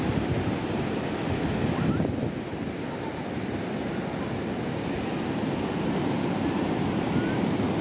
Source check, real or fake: real